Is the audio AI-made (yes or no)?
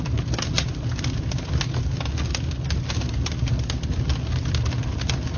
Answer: no